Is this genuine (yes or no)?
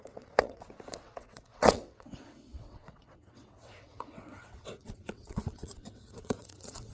no